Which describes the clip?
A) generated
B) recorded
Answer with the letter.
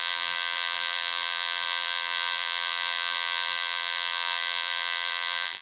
A